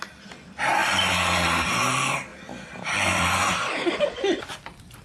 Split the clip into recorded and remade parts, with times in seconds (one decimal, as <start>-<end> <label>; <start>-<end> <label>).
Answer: 0.0-2.3 recorded; 2.3-4.5 remade; 4.5-5.0 recorded